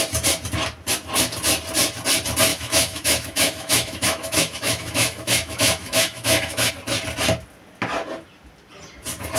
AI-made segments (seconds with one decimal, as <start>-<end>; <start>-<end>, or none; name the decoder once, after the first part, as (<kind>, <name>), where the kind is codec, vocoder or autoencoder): 2.5-6.7 (autoencoder, DAC-VAE)